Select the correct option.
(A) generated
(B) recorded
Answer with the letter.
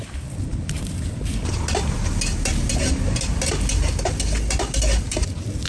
B